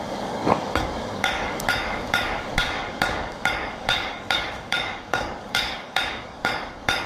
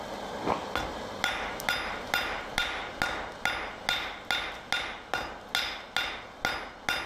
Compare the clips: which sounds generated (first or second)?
first